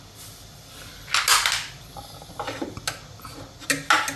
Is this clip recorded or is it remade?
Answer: recorded